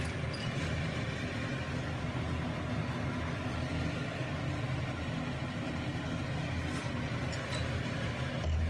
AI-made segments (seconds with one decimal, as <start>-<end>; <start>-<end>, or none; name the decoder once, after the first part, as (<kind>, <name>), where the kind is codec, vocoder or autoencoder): none